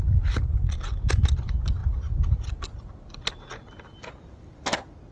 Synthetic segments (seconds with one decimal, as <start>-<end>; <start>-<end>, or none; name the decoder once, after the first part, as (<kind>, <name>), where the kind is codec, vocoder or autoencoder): none